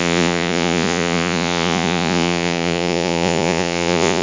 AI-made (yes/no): yes